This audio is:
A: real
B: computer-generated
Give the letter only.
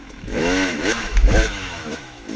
B